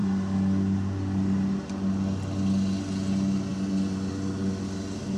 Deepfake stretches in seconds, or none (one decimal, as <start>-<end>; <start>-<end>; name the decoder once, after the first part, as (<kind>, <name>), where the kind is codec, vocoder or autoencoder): none